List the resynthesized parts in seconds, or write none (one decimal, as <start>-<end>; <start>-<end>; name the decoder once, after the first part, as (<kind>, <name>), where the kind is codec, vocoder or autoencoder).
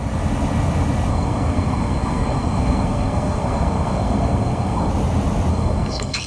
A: 1.1-4.9 (codec, SNAC); 5.5-6.3